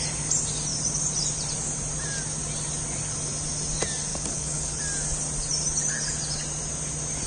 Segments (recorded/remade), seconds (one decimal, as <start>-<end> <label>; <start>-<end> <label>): 0.0-4.1 recorded; 4.1-4.8 remade; 4.8-7.3 recorded